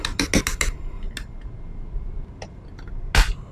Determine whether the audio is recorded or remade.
recorded